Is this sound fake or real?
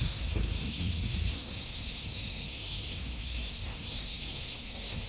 fake